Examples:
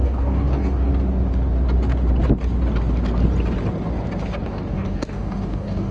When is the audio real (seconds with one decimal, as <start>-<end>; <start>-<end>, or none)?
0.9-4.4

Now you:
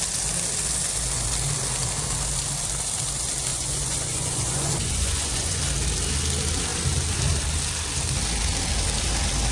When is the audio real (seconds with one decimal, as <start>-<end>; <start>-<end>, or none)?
0.0-3.5; 5.6-9.5

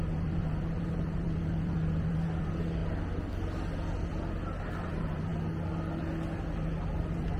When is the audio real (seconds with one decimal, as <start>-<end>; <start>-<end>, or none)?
2.8-4.7; 5.3-6.5

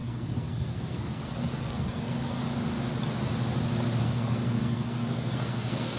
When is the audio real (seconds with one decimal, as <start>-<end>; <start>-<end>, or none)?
2.4-4.0